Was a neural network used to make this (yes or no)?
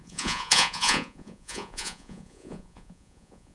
yes